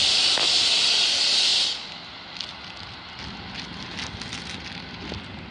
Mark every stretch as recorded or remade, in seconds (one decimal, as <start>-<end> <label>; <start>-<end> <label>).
0.0-5.5 recorded